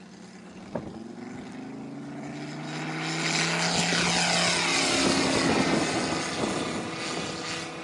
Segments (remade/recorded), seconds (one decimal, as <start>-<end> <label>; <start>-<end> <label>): 0.0-7.8 recorded